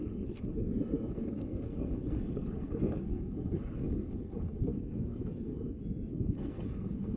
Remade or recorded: remade